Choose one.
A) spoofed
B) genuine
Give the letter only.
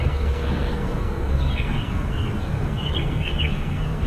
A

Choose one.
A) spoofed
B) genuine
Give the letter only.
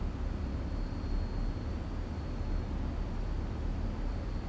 B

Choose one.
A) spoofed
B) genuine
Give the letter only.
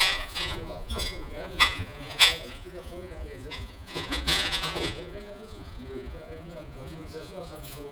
A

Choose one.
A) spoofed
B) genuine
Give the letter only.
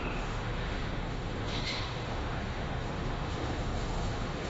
A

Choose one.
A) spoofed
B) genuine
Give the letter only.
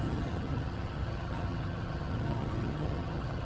A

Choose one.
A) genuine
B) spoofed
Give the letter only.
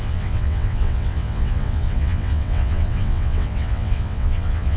B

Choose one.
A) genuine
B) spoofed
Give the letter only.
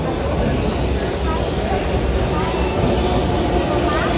A